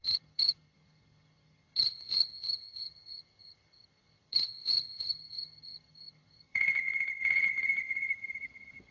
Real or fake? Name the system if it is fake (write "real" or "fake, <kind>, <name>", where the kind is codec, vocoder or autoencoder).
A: fake, vocoder, HiFi-GAN